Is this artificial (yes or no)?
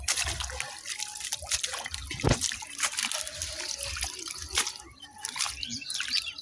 no